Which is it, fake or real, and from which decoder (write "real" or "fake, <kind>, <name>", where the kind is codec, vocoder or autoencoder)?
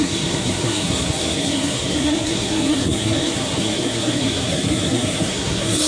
fake, codec, SNAC